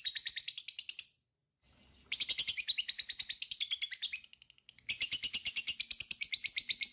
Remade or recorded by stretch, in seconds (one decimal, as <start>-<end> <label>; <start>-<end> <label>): 0.0-6.9 recorded